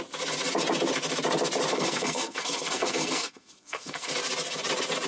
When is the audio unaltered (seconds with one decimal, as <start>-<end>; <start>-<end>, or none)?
0.0-1.7; 4.1-5.1